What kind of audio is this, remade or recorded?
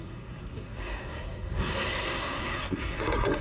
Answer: remade